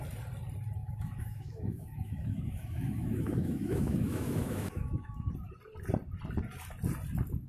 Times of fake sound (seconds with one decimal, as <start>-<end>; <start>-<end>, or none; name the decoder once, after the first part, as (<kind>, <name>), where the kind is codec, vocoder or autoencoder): 0.8-5.3 (autoencoder, DAC-VAE)